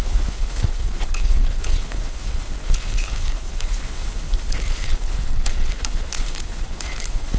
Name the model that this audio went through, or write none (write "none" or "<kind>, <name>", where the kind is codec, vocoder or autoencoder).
codec, HILCodec